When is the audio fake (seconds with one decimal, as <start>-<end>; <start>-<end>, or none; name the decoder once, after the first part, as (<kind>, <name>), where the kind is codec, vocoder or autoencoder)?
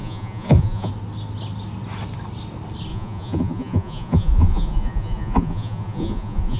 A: 0.0-0.9 (vocoder, Vocos); 2.9-6.6